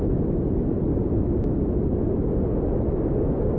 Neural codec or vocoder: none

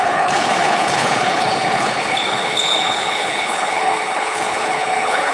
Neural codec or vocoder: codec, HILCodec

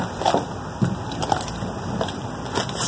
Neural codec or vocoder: none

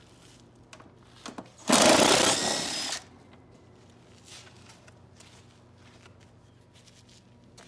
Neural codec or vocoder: none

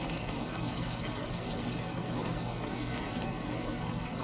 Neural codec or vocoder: codec, SNAC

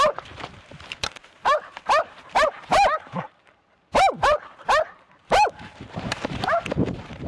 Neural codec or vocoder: vocoder, BigVGAN v2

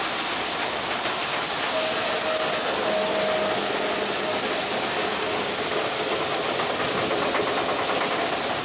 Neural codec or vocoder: none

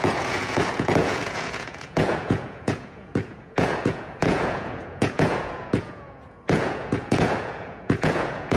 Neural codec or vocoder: vocoder, Vocos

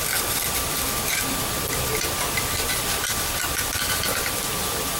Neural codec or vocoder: vocoder, BigVGAN v2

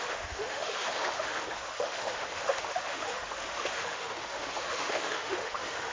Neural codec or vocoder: autoencoder, DAC-VAE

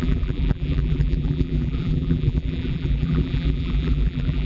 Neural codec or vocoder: vocoder, BigVGAN v2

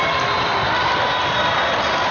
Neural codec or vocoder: none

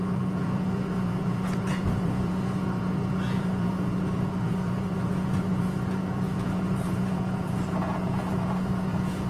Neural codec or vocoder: vocoder, Vocos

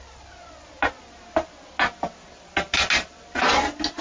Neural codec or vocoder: none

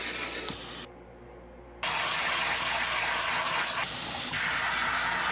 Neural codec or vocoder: none